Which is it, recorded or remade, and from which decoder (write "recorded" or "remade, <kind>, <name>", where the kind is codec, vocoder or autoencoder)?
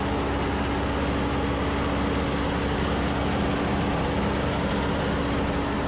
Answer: recorded